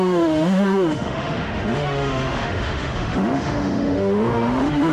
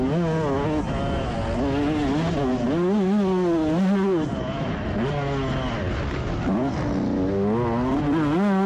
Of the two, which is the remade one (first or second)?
first